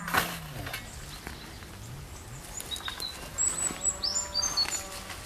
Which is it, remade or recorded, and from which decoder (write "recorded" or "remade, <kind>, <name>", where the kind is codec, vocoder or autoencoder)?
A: recorded